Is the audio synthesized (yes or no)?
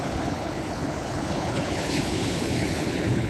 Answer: yes